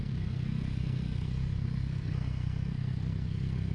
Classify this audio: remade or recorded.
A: remade